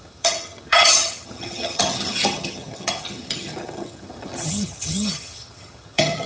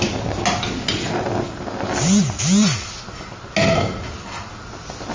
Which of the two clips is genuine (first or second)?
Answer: second